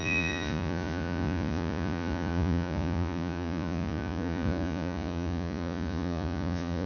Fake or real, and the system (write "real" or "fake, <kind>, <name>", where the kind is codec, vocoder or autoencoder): fake, vocoder, Vocos